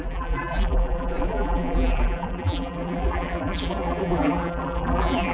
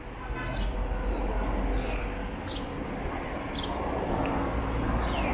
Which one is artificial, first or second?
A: first